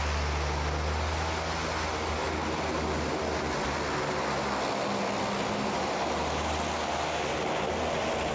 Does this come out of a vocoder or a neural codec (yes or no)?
no